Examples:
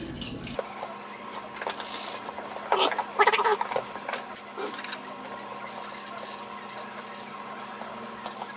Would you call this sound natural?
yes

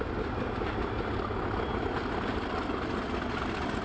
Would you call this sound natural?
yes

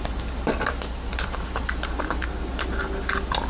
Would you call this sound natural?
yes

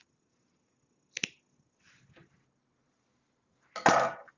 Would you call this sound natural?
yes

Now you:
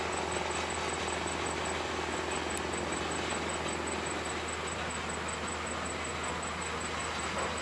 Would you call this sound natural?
yes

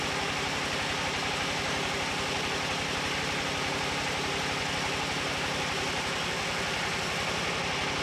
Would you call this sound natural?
yes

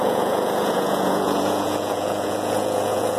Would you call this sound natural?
no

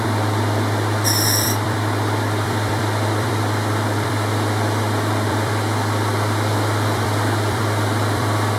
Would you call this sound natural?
no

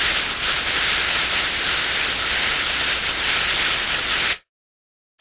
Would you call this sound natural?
yes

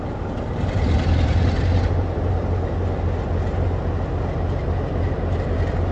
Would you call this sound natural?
yes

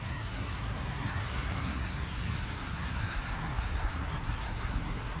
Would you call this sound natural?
no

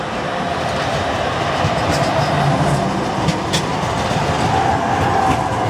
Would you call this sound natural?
yes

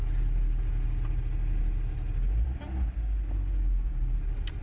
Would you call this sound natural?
yes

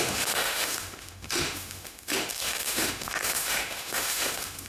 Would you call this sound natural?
no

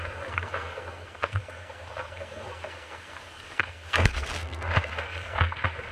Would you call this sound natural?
no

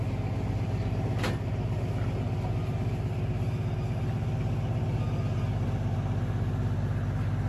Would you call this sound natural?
yes